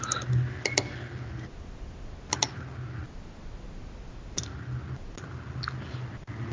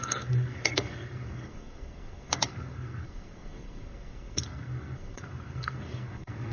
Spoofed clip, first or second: second